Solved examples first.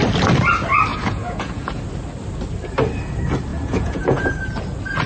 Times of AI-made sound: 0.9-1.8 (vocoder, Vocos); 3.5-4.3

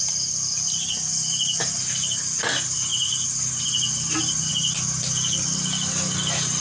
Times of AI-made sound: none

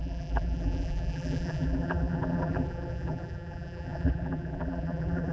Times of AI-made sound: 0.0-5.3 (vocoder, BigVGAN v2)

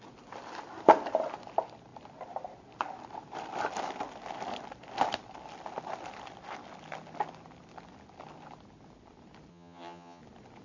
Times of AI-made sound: 9.5-10.2 (vocoder, HiFi-GAN)